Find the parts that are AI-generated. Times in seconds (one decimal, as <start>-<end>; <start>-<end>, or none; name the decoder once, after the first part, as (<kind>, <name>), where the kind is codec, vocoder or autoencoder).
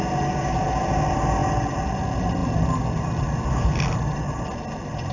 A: none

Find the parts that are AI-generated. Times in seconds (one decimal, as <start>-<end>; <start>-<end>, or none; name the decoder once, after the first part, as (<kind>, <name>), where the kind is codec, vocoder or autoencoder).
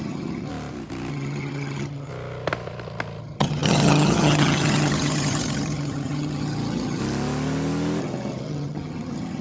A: 0.0-0.5 (vocoder, HiFi-GAN); 1.1-2.1; 3.2-7.0; 8.0-9.4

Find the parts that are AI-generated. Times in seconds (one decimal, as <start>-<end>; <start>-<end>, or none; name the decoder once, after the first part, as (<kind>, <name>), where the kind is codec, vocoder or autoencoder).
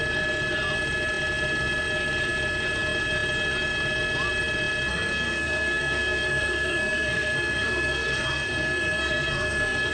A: 4.9-9.9 (codec, SNAC)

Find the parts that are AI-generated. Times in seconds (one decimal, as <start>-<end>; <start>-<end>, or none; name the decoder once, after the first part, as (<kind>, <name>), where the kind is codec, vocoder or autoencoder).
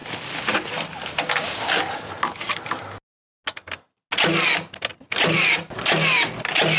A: 0.0-2.8 (vocoder, BigVGAN v2)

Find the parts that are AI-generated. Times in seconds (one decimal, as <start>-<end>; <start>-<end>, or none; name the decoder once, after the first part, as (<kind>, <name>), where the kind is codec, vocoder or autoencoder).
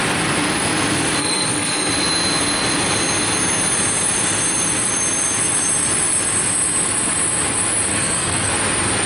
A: 1.2-1.9 (codec, SNAC); 7.9-8.5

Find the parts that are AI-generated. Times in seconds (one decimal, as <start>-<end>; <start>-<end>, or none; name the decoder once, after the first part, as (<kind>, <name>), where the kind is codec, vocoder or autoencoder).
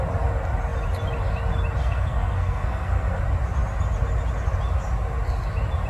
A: 1.8-3.2 (codec, SNAC)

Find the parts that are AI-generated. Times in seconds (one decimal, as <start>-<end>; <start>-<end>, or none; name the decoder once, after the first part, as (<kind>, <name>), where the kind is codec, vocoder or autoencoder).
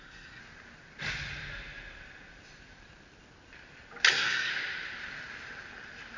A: 0.0-0.4 (codec, SNAC); 4.1-4.5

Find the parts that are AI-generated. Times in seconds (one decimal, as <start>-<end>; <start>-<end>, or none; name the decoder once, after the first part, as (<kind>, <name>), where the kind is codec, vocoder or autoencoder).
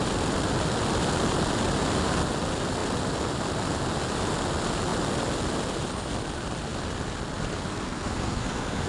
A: 7.7-8.9 (codec, SNAC)